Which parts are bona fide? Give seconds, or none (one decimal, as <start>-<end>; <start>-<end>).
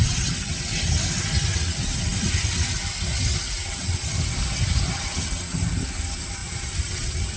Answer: 0.0-7.4